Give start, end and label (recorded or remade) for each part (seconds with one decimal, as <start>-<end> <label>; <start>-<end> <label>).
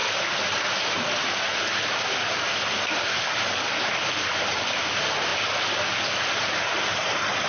0.0-7.5 recorded